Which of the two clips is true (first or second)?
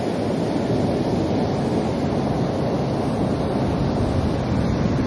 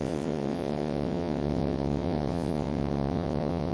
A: first